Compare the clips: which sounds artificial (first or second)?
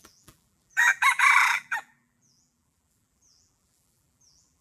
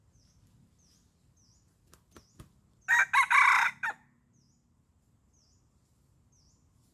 first